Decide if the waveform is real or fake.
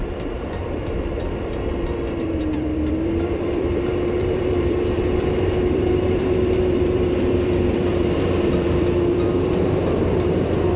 fake